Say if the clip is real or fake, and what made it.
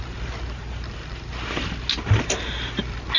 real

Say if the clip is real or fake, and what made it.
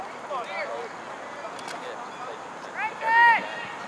real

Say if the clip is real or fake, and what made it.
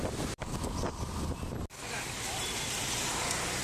real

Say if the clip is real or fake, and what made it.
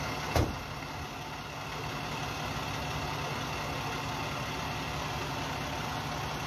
real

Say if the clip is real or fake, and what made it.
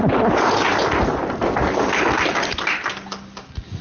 real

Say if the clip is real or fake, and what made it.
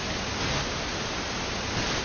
real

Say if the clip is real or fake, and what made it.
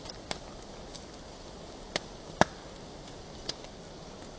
real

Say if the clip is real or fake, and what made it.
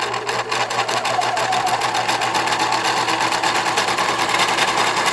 real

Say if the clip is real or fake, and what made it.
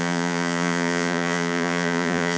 fake, vocoder, Vocos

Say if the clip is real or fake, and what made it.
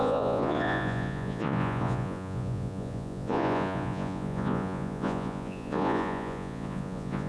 fake, vocoder, Vocos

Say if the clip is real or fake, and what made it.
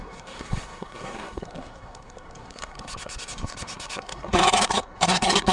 fake, codec, SNAC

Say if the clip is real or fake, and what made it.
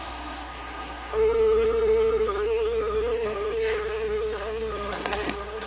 fake, codec, SNAC